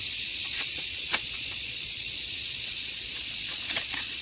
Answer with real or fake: fake